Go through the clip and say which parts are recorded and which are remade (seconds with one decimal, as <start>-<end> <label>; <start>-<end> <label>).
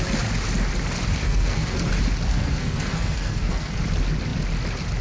0.0-1.2 recorded; 1.2-1.9 remade; 1.9-2.3 recorded; 2.3-3.8 remade; 3.8-5.0 recorded